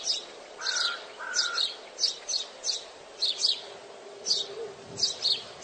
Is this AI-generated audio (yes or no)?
no